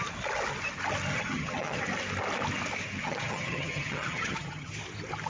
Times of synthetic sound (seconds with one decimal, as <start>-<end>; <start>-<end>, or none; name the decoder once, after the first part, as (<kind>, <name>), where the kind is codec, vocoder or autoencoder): 1.1-1.8 (vocoder, HiFi-GAN); 3.0-4.7